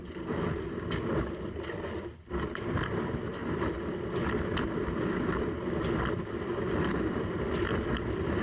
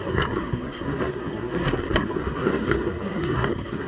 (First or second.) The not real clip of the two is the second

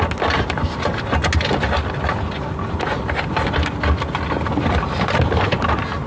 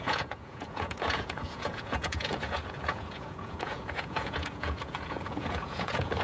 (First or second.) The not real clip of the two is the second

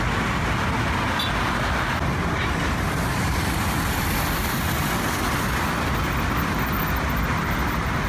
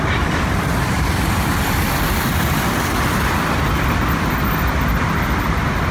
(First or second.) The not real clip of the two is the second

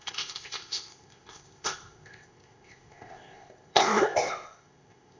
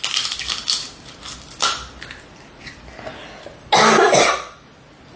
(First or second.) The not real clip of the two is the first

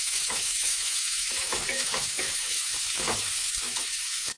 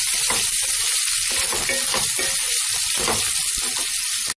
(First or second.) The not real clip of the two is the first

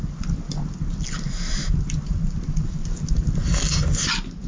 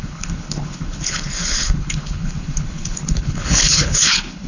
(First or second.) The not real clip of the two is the second